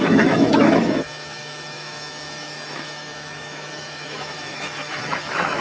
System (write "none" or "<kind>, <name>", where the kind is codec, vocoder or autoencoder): autoencoder, DAC-VAE